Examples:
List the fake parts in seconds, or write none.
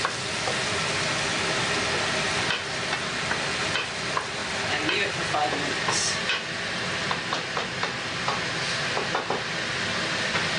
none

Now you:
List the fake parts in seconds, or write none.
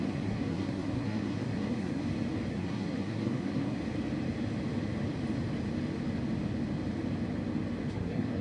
0.0-2.0; 2.5-3.8; 7.9-8.4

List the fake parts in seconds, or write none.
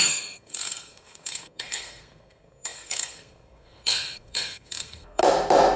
0.0-5.2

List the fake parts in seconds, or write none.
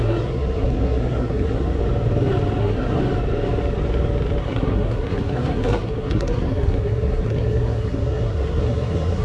0.0-1.8; 2.6-3.0; 4.4-9.2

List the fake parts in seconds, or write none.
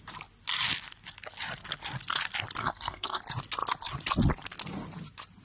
2.6-3.2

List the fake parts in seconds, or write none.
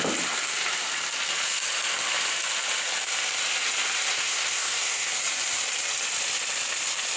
4.1-5.1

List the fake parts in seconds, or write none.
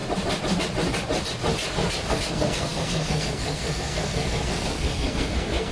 2.1-5.7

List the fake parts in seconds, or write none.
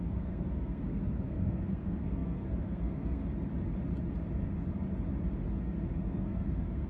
0.0-3.2; 5.6-6.9